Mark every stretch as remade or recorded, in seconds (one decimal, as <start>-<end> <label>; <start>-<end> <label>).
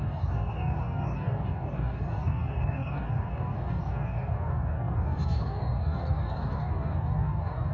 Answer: 0.0-7.7 remade